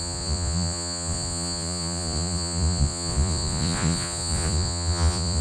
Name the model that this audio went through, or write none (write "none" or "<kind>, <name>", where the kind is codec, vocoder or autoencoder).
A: vocoder, Vocos